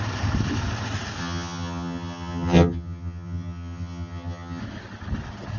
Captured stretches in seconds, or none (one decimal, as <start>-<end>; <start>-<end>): 0.0-1.2; 4.6-5.6